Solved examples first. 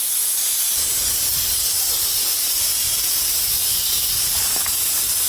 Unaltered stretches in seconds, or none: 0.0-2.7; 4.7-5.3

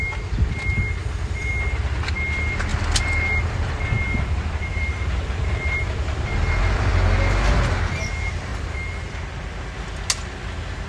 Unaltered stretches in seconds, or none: 0.0-1.0; 1.5-2.7; 3.7-4.7; 6.9-8.5; 9.2-10.9